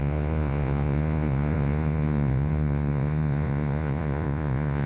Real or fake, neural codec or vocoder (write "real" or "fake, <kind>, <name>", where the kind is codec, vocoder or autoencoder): fake, vocoder, Vocos